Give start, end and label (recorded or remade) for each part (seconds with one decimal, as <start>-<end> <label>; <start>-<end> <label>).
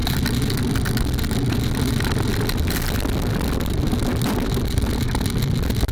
0.0-5.9 recorded